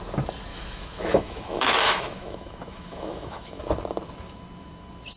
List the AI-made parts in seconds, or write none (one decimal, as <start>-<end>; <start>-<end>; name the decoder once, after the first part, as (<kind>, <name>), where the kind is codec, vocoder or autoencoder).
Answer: 0.5-3.6 (autoencoder, DAC-VAE)

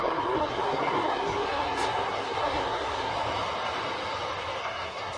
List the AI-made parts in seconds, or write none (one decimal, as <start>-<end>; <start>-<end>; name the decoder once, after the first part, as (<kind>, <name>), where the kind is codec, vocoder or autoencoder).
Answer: 0.0-3.1 (codec, SNAC); 4.6-5.2

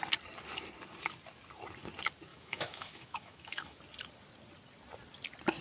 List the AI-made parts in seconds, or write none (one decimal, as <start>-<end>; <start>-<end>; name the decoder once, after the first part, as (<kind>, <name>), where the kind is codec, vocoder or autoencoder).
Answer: 2.3-3.8 (autoencoder, DAC-VAE)

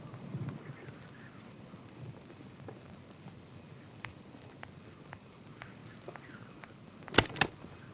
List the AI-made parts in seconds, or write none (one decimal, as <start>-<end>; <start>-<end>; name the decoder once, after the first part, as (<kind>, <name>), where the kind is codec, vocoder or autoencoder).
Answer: none

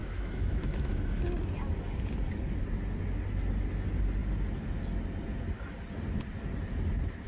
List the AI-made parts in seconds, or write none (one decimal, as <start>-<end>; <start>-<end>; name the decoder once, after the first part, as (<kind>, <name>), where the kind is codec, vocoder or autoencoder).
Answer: 0.0-1.0 (autoencoder, DAC-VAE)

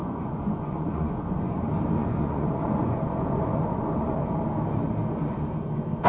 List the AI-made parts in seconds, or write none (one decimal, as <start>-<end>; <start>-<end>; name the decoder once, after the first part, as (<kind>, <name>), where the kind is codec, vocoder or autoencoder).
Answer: 0.0-1.6 (vocoder, Vocos); 2.0-4.2